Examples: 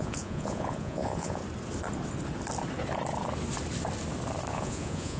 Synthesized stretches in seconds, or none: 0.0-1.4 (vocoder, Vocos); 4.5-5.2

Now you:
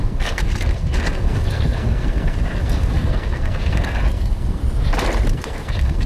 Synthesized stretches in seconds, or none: 0.0-4.6 (codec, SNAC); 5.3-6.1

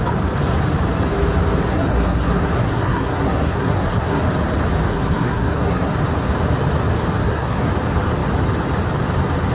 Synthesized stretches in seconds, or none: 1.7-4.2 (codec, SNAC); 4.9-5.9; 7.2-7.7